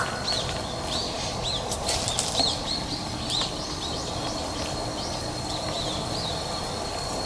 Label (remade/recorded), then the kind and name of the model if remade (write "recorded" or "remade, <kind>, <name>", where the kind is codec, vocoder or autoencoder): recorded